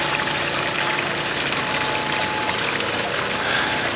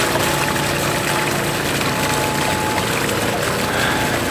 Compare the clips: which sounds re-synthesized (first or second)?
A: first